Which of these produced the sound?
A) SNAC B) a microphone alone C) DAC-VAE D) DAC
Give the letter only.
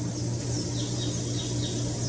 B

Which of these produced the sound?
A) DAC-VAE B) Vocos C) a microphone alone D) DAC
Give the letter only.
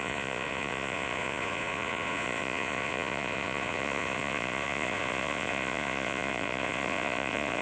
B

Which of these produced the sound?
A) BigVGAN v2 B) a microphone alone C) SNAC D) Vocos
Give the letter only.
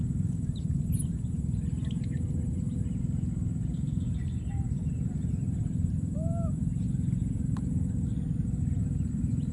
B